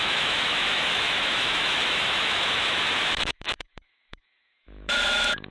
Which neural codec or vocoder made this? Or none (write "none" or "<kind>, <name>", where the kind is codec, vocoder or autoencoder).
autoencoder, DAC-VAE